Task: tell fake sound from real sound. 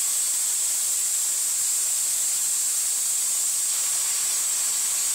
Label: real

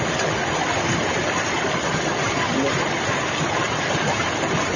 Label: real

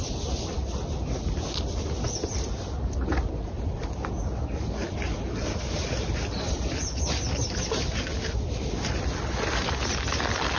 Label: real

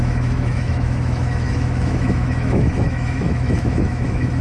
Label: fake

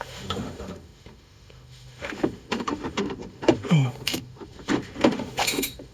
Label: fake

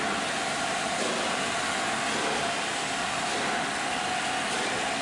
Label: real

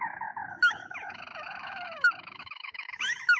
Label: fake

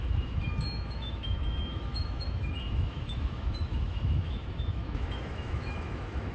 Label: fake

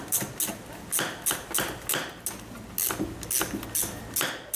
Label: real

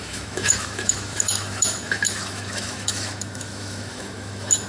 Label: fake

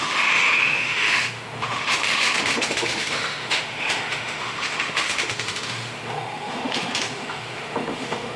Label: fake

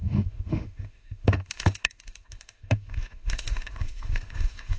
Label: fake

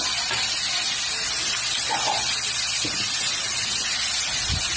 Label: real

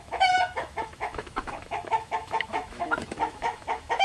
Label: fake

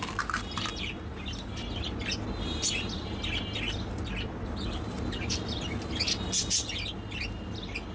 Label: real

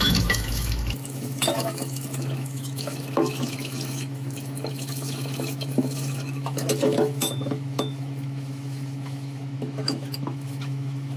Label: fake